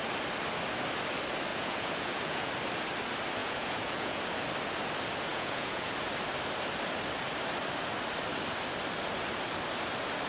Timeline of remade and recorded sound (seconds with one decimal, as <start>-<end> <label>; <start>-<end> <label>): 0.0-1.5 recorded; 1.5-2.5 remade; 2.5-3.4 recorded; 3.4-4.2 remade; 4.2-5.3 recorded; 5.3-5.9 remade; 5.9-10.3 recorded